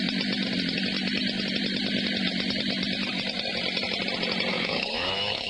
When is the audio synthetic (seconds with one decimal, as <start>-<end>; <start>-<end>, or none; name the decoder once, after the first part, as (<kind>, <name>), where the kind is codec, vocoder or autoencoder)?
4.5-5.5 (autoencoder, DAC-VAE)